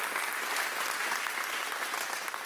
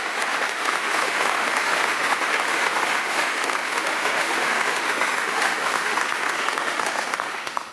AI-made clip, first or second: second